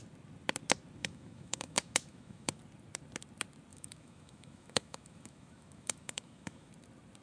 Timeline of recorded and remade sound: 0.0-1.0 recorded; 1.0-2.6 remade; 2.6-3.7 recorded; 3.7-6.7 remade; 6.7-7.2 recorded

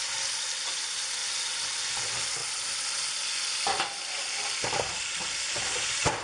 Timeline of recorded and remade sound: 0.0-1.2 recorded; 1.2-1.8 remade; 1.8-2.4 recorded; 2.4-4.7 remade; 4.7-6.2 recorded

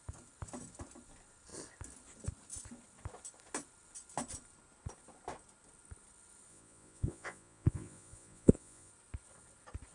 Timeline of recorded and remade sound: 0.0-6.5 recorded; 6.5-8.9 remade; 8.9-9.9 recorded

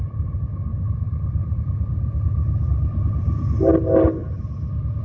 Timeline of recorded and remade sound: 0.0-0.7 recorded; 0.7-3.7 remade; 3.7-4.2 recorded; 4.2-5.0 remade

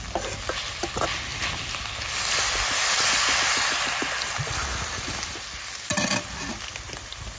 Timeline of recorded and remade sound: 0.0-7.4 recorded